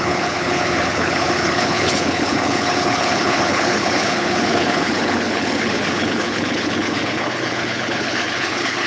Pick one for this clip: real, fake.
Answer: fake